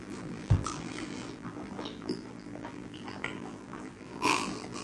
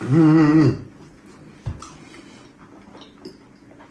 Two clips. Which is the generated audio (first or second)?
first